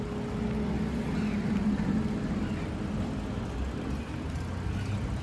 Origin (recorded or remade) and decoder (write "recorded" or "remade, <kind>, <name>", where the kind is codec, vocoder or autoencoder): recorded